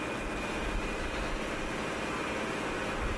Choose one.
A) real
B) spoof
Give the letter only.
A